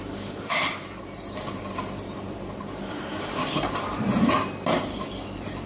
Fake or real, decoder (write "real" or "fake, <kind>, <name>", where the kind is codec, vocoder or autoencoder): fake, vocoder, BigVGAN v2